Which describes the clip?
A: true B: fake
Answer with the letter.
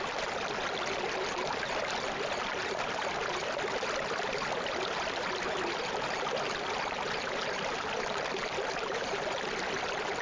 A